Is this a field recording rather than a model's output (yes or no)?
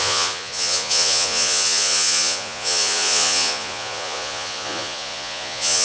no